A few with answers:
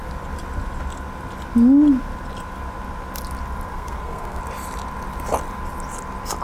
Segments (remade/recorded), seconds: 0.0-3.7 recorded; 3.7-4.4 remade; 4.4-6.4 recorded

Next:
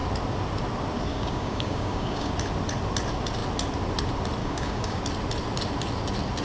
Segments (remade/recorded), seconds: 0.0-1.1 recorded; 1.1-2.3 remade; 2.3-4.4 recorded; 4.4-5.0 remade; 5.0-6.4 recorded

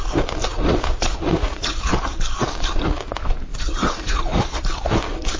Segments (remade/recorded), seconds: 0.0-0.5 recorded; 0.5-1.9 remade; 1.9-3.5 recorded; 3.5-4.6 remade; 4.6-5.4 recorded

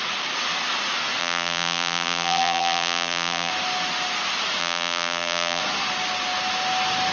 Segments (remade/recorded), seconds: 0.0-1.2 recorded; 1.2-3.5 remade; 3.5-4.6 recorded; 4.6-5.6 remade; 5.6-7.1 recorded

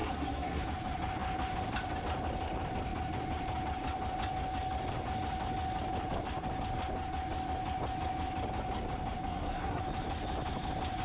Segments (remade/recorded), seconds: 0.0-0.6 remade; 0.6-9.3 recorded; 9.3-9.8 remade; 9.8-11.0 recorded

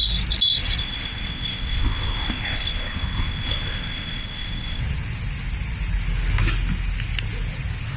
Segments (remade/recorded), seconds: 0.0-0.8 recorded; 0.8-4.8 remade; 4.8-8.0 recorded

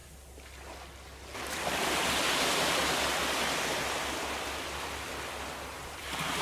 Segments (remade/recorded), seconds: 0.0-6.4 recorded

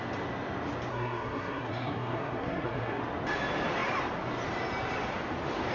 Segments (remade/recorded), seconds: 0.0-0.9 recorded; 0.9-3.0 remade; 3.0-5.7 recorded